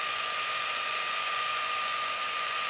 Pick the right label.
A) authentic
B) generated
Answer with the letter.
B